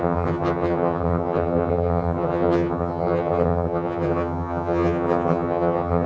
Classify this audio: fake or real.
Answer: fake